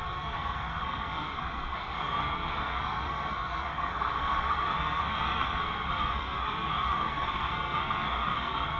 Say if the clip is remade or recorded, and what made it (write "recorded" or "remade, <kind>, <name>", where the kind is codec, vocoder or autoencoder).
remade, codec, SNAC